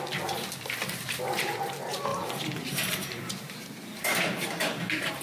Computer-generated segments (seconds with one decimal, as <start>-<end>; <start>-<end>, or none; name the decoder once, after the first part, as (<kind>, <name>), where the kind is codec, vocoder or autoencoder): 2.1-5.2 (vocoder, BigVGAN v2)